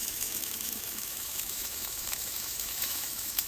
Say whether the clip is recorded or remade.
remade